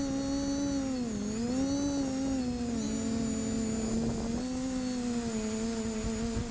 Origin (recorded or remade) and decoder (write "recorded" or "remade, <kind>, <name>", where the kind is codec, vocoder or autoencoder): recorded